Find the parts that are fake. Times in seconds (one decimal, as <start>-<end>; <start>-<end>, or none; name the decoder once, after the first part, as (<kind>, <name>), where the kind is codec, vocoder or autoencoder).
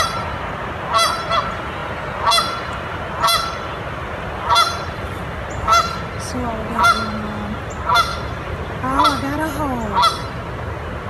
none